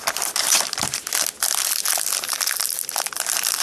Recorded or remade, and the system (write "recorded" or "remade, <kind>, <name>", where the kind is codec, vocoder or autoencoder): recorded